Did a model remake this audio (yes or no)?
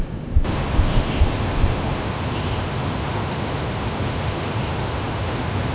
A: yes